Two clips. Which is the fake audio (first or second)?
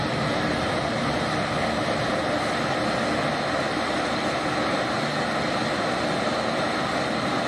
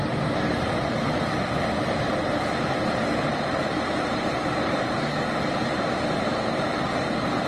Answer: second